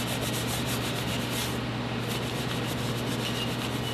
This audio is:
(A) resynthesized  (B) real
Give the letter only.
B